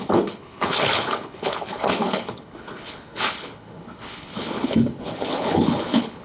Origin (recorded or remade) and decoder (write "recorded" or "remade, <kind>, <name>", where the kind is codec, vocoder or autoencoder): remade, codec, HILCodec